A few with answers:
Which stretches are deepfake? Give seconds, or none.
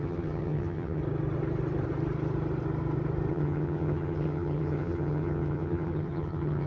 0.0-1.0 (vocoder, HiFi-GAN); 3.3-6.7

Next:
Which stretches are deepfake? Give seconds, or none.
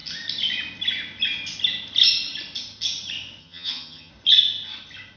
3.4-4.1 (vocoder, HiFi-GAN)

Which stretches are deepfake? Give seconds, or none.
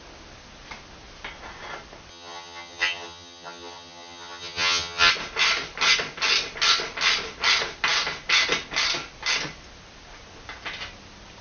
2.1-5.1 (vocoder, HiFi-GAN)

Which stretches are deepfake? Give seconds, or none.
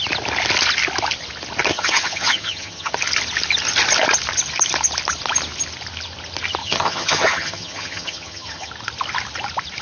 1.7-2.9 (vocoder, HiFi-GAN); 6.6-8.7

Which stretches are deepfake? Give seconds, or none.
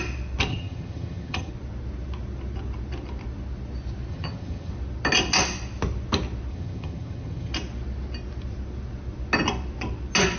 0.5-1.5 (vocoder, HiFi-GAN); 4.1-4.7; 6.5-7.5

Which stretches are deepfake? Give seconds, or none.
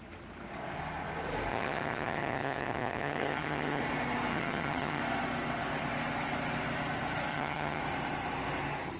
1.5-3.8 (vocoder, HiFi-GAN); 4.3-5.0; 7.3-7.8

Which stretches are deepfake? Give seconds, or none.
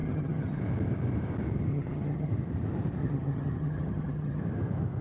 0.0-0.6 (vocoder, HiFi-GAN); 1.7-2.3; 3.0-4.4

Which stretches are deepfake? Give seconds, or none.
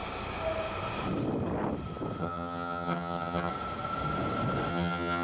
2.2-3.5 (vocoder, HiFi-GAN); 4.7-5.2